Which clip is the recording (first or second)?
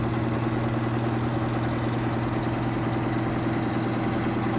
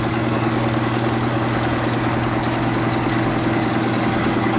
first